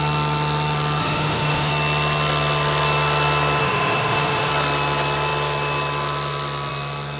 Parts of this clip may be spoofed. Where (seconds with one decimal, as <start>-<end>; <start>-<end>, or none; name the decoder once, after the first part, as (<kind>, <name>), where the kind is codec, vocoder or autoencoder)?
1.0-1.7 (autoencoder, DAC-VAE); 3.6-4.5